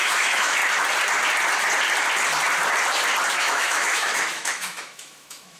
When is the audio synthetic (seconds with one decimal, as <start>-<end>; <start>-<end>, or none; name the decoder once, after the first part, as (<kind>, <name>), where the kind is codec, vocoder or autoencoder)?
0.0-0.6 (autoencoder, DAC-VAE); 3.3-5.6